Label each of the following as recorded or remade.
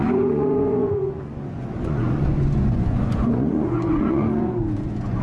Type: remade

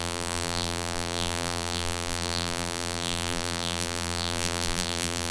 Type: remade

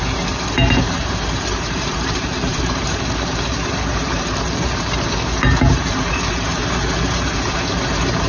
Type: remade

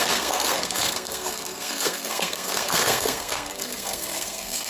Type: remade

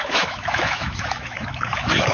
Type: remade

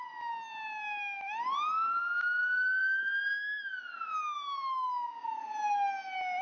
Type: recorded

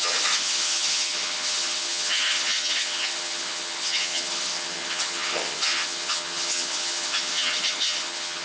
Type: remade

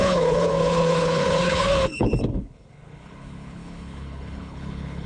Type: remade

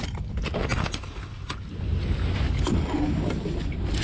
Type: recorded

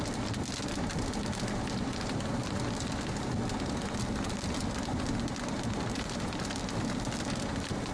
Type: recorded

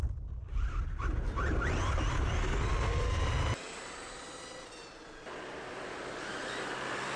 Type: recorded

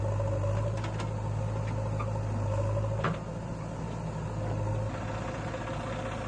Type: recorded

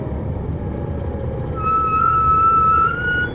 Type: recorded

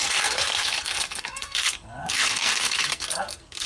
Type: remade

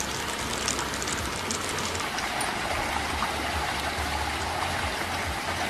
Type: recorded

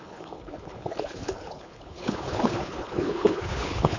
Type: remade